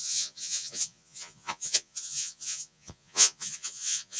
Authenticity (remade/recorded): remade